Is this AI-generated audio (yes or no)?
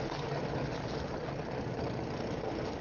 no